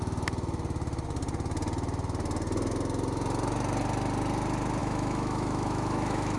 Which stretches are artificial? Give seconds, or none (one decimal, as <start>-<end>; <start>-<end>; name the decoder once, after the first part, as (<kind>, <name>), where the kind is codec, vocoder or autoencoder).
4.8-6.4 (autoencoder, DAC-VAE)